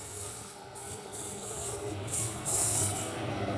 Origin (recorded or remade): remade